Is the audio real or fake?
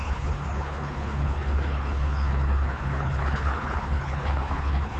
fake